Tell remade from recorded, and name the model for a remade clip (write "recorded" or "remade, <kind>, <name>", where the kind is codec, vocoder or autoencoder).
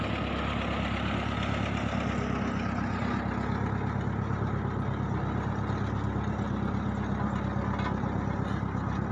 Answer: recorded